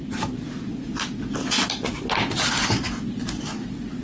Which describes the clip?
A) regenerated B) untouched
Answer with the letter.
B